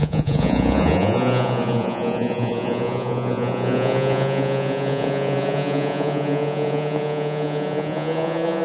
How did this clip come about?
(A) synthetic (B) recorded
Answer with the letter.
A